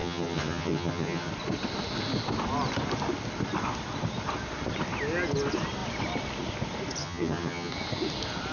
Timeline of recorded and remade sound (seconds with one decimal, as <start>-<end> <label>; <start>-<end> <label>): 0.0-1.3 remade; 1.3-7.0 recorded; 7.0-7.7 remade; 7.7-8.5 recorded